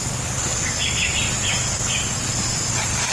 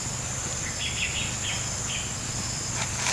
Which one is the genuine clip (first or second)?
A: second